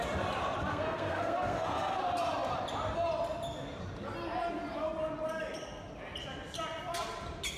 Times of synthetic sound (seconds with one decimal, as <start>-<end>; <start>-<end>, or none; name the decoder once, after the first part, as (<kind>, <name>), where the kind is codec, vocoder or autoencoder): 0.7-2.0 (codec, SNAC)